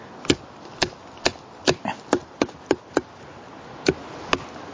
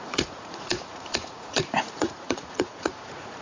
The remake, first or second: second